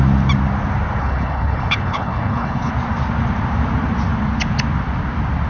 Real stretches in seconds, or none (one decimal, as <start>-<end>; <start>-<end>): 0.0-1.0; 2.7-5.5